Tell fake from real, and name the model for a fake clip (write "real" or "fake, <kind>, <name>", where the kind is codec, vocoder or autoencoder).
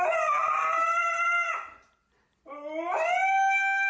real